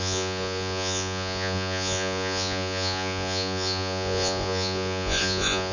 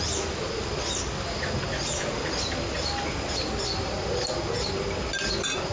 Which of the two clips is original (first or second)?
second